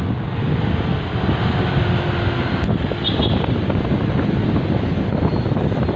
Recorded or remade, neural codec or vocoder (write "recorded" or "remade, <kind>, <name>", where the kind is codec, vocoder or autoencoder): recorded